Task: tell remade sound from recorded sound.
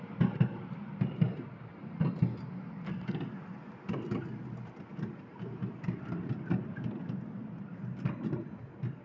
recorded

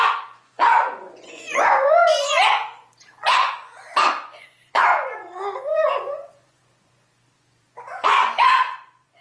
remade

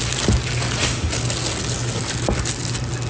recorded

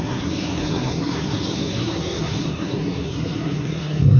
remade